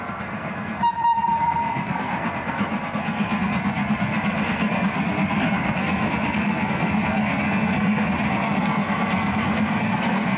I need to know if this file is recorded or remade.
remade